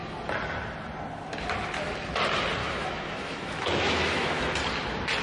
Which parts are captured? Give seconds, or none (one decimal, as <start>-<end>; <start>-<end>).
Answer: 0.0-2.6; 4.4-5.2